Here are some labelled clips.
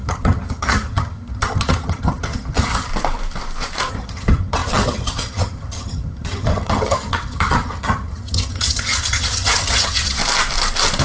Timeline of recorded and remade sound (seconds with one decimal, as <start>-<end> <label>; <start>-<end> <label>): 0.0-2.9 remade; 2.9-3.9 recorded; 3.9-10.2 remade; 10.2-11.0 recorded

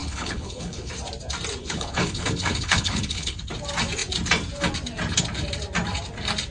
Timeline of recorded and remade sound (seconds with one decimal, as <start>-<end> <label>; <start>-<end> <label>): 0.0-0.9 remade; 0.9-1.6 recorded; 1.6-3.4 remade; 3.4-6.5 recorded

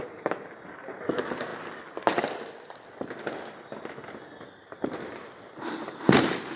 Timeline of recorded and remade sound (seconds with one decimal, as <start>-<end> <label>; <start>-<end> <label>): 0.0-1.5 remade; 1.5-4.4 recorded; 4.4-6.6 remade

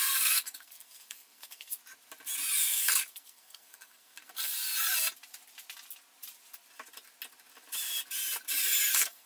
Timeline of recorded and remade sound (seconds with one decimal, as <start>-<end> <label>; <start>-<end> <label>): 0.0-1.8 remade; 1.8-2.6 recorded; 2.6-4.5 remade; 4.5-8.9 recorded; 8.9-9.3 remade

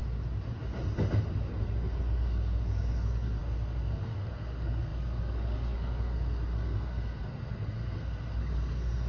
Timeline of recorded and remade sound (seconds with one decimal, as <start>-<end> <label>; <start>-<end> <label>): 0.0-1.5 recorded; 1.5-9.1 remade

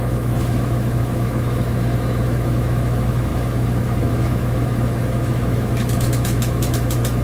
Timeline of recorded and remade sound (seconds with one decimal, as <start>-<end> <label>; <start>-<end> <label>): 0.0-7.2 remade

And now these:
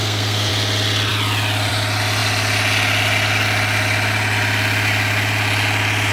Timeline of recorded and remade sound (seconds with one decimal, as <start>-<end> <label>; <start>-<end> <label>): 0.0-0.5 remade; 0.5-6.1 recorded